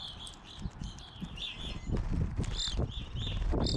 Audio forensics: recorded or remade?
recorded